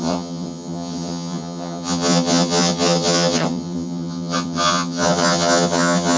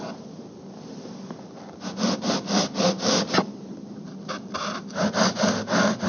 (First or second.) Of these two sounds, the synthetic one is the first